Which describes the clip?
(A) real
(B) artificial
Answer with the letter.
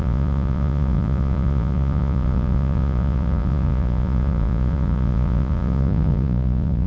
B